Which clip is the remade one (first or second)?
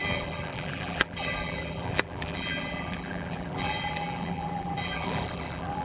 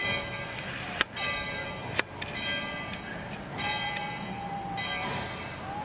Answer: first